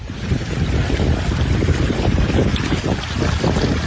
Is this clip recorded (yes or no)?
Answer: yes